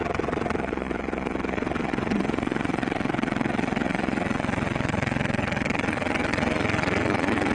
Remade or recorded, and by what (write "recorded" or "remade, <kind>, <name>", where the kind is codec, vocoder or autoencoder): remade, vocoder, Vocos